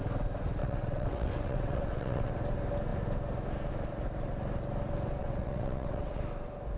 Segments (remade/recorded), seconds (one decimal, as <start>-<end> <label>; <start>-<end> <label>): 0.0-0.6 recorded; 0.6-2.3 remade; 2.3-5.2 recorded; 5.2-6.2 remade; 6.2-6.8 recorded